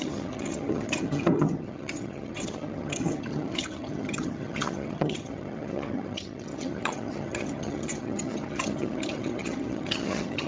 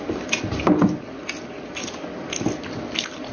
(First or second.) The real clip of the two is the second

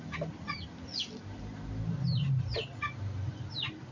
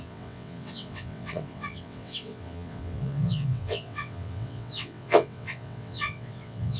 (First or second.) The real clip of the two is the first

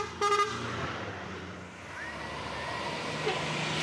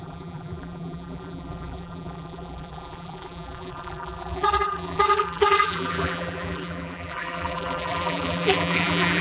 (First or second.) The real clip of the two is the first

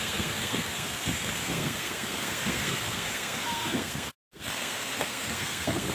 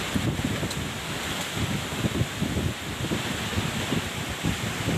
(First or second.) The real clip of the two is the second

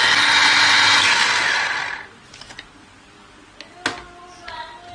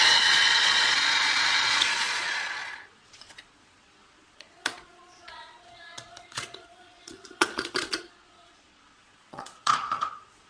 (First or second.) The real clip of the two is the first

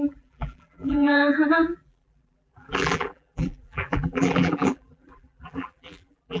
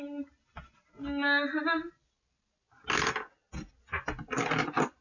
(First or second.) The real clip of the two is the second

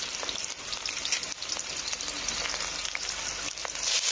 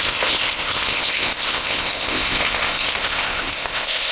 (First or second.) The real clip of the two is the first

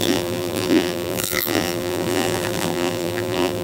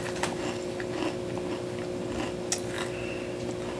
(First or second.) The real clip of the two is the second